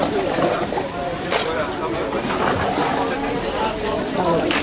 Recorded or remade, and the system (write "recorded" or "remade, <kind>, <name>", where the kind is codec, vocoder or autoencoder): recorded